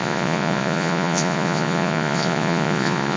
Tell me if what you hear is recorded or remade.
remade